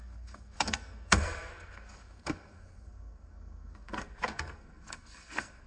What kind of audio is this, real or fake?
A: fake